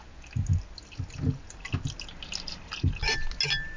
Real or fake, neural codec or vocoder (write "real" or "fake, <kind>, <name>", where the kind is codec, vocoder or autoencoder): real